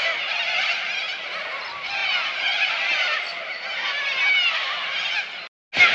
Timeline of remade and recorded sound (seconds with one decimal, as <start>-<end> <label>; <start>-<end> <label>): 0.0-5.9 recorded